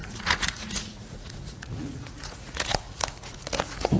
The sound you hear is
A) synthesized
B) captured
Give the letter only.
A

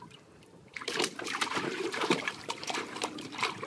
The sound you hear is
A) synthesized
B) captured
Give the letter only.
A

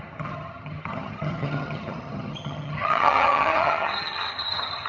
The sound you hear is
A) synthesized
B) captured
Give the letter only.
A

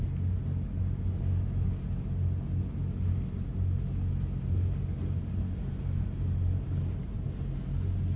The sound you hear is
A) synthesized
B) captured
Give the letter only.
B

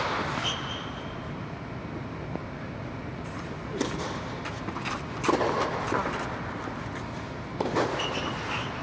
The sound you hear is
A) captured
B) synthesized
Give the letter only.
A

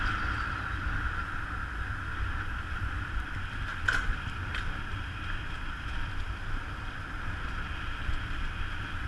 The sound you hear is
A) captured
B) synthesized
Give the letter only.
A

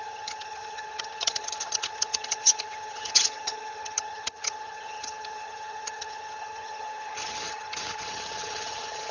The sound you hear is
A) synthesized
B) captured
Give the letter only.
A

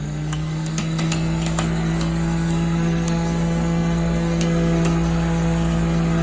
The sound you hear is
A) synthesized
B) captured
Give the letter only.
A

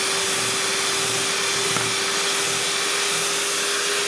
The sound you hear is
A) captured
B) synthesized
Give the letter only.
A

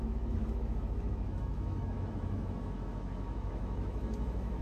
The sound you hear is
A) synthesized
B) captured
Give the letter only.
A